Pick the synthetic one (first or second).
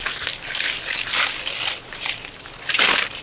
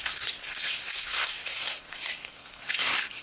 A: second